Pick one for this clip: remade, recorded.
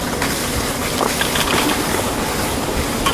recorded